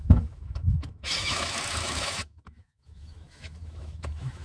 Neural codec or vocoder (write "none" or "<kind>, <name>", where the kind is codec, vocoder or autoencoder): autoencoder, DAC-VAE